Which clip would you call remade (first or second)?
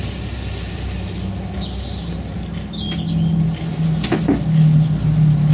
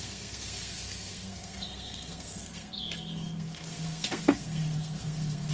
second